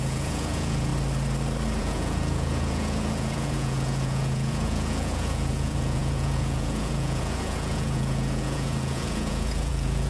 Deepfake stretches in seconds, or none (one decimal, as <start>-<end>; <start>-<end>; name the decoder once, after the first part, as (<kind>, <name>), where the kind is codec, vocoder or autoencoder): 0.0-0.9 (vocoder, Vocos); 1.8-10.1

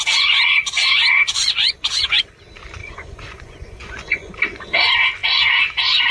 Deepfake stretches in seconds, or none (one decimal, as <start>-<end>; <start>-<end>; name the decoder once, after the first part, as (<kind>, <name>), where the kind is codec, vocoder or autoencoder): 1.2-2.3 (vocoder, Vocos); 2.8-4.3

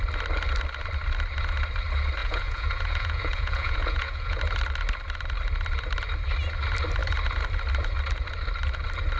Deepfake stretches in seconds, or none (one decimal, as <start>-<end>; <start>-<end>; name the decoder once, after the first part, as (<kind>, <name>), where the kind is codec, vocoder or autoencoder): 2.2-4.4 (vocoder, Vocos)

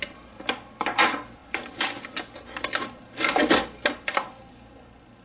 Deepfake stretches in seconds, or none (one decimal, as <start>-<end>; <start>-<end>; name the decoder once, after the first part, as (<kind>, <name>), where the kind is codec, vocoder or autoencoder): none

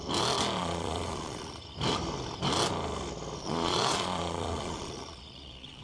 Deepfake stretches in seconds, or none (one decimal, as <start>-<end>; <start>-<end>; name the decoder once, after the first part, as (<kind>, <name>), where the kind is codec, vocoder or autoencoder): 0.6-1.6 (vocoder, Vocos); 3.4-5.8

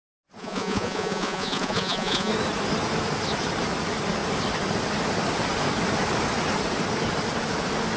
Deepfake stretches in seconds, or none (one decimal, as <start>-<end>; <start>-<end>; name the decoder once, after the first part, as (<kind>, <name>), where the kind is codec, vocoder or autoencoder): 0.4-2.3 (vocoder, Vocos)

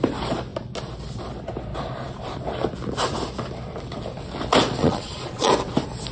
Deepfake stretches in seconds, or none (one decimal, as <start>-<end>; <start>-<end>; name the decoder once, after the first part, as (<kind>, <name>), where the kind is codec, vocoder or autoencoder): 4.8-5.5 (vocoder, Vocos)

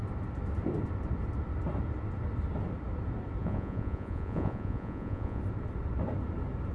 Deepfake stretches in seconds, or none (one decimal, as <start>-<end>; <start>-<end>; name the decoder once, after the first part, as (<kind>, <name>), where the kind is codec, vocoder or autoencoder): 3.4-5.4 (vocoder, Vocos)